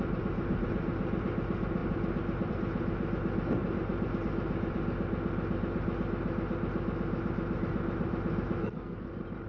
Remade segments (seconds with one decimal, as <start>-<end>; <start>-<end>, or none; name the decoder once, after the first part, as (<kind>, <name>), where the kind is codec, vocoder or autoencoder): 8.6-9.1 (codec, SNAC)

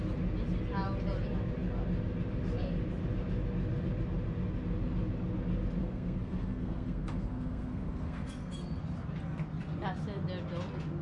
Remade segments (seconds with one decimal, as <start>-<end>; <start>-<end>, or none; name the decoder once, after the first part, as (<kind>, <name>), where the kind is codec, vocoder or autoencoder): 5.8-8.8 (codec, SNAC)

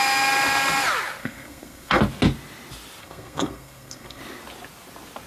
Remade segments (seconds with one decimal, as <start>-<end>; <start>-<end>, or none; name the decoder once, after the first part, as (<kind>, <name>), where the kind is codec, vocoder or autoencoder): 1.2-2.0 (codec, SNAC); 3.0-4.2

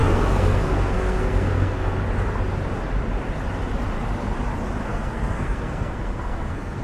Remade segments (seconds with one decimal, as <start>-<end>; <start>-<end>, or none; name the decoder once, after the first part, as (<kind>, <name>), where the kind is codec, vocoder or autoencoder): 0.0-2.0 (codec, SNAC); 4.8-6.8

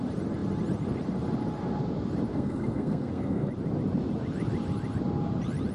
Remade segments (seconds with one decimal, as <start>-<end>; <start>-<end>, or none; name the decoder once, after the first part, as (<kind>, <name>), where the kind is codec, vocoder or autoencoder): 2.3-3.5 (codec, SNAC)

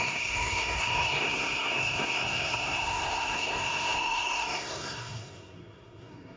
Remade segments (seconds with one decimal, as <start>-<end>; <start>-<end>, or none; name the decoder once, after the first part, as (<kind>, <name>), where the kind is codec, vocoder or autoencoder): 0.0-6.4 (codec, SNAC)